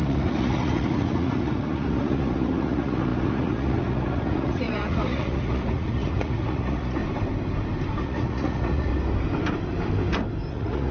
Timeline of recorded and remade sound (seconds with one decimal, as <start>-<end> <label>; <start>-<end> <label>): 0.0-7.0 remade; 7.0-8.0 recorded; 8.0-8.9 remade; 8.9-10.5 recorded; 10.5-10.9 remade